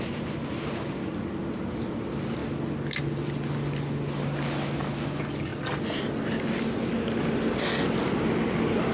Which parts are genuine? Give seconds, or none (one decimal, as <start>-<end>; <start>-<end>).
0.0-8.9